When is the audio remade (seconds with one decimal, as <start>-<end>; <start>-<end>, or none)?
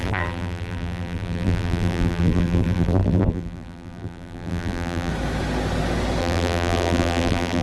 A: 0.0-5.1; 6.2-7.6